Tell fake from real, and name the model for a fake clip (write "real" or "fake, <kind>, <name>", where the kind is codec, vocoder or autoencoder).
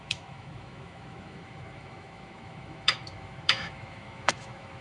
fake, autoencoder, DAC-VAE